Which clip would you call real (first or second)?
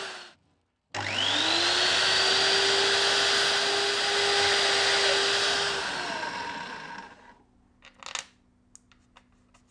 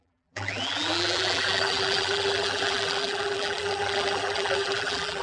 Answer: first